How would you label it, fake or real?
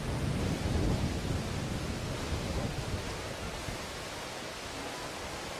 real